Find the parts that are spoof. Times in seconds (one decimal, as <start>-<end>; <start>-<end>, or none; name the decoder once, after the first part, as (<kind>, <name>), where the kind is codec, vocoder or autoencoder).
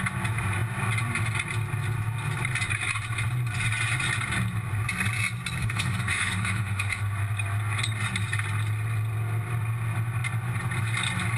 5.6-7.0 (autoencoder, DAC-VAE)